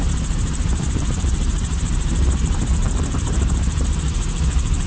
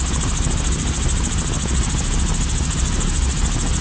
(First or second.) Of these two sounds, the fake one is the first